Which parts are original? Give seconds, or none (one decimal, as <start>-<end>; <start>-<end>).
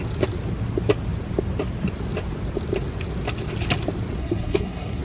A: 0.0-4.2